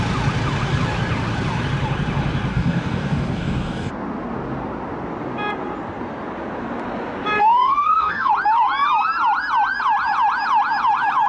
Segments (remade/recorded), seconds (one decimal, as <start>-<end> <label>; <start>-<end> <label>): 0.0-2.5 recorded; 2.5-3.9 remade; 3.9-7.4 recorded; 7.4-8.3 remade; 8.3-11.3 recorded